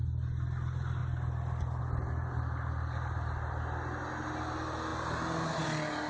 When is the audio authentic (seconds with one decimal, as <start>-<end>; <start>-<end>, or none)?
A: 0.0-6.1